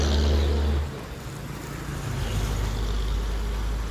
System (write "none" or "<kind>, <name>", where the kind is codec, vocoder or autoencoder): none